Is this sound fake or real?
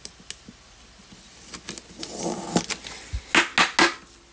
real